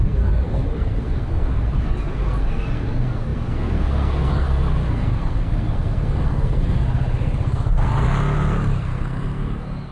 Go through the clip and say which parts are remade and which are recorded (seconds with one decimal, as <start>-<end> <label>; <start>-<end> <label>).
0.0-9.9 remade

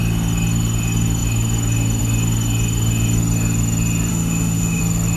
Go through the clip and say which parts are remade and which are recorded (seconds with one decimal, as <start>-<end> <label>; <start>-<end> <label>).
0.0-4.1 recorded; 4.1-4.8 remade; 4.8-5.2 recorded